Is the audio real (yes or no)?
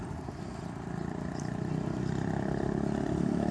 yes